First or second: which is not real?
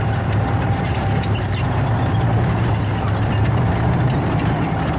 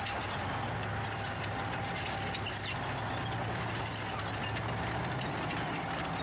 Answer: first